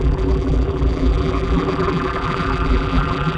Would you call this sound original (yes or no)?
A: no